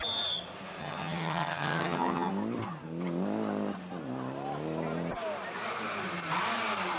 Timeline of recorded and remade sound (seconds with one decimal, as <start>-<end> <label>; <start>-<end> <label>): 0.0-0.8 recorded; 0.8-2.3 remade; 2.3-7.0 recorded